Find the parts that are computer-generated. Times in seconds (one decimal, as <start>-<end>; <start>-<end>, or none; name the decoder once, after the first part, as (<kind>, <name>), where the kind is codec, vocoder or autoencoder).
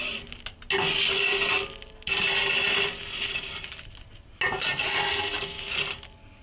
none